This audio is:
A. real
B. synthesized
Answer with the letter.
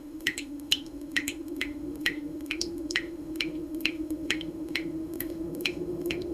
B